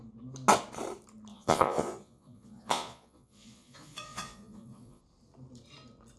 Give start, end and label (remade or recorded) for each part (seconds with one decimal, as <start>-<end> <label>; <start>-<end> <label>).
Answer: 0.0-1.3 recorded; 1.3-5.0 remade; 5.0-6.2 recorded